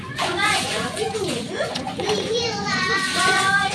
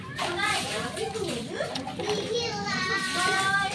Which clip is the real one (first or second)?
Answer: second